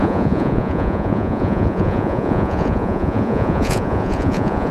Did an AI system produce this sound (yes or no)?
yes